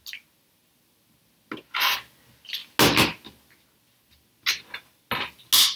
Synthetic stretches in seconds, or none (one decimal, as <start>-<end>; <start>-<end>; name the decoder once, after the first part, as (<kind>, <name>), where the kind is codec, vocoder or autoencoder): none